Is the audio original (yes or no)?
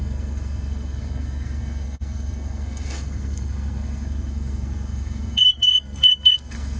no